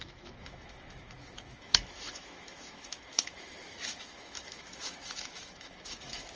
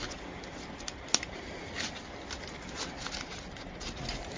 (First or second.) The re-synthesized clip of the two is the first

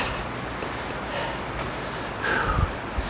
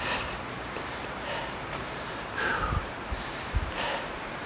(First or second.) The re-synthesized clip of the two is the second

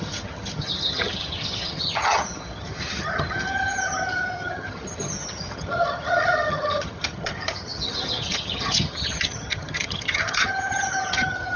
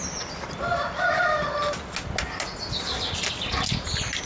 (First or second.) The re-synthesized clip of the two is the first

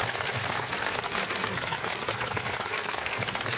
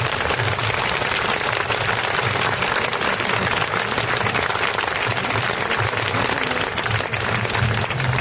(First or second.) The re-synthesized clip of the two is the first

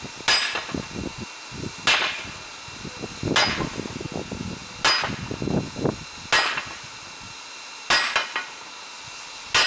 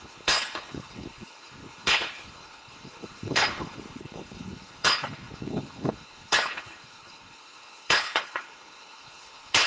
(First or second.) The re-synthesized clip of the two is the second